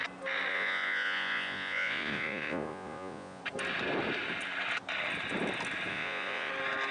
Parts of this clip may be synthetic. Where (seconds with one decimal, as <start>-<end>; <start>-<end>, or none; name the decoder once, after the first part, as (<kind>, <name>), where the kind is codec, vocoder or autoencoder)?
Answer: 0.5-3.4 (vocoder, Vocos); 5.9-6.5